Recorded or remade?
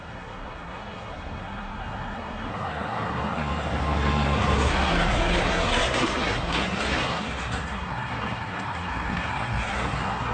remade